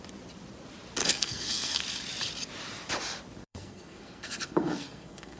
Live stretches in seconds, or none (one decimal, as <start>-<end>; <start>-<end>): 0.0-1.0; 1.8-3.4